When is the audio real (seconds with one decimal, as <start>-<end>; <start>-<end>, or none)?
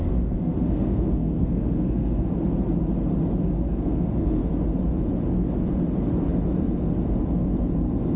2.3-3.4; 4.4-8.2